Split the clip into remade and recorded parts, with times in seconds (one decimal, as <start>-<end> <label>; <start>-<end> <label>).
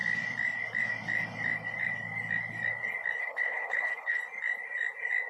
0.0-3.2 recorded; 3.2-4.2 remade; 4.2-5.3 recorded